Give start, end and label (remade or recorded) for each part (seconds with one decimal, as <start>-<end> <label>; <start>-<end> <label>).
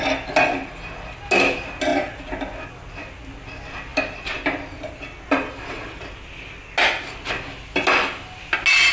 0.0-8.9 recorded